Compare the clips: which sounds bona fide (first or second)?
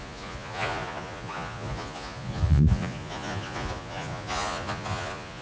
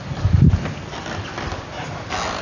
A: second